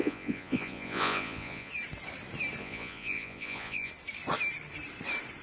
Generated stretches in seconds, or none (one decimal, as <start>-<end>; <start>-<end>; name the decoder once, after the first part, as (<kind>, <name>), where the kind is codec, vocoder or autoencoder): 0.0-1.7 (vocoder, Vocos); 2.6-3.9